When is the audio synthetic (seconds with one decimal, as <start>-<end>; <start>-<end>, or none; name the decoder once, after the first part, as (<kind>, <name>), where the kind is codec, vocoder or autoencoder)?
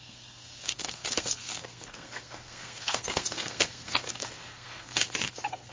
0.0-5.7 (codec, SNAC)